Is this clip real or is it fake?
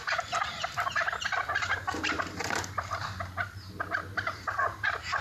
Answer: real